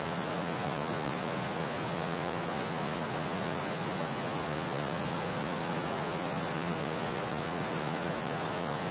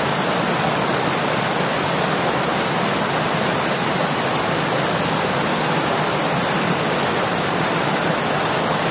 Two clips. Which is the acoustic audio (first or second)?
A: second